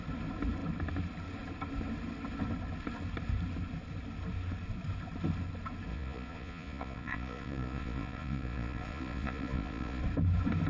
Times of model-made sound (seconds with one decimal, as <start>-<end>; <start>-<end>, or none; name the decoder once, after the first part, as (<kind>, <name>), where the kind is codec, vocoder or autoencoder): 5.9-10.0 (vocoder, Vocos)